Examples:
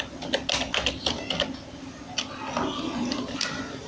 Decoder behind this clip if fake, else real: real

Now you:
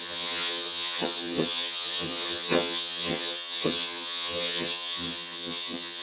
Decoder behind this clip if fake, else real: fake, vocoder, HiFi-GAN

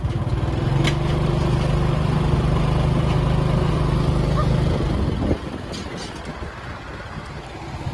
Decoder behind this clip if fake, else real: real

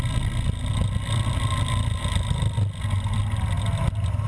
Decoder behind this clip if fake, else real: real